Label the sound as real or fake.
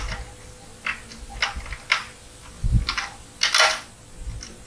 real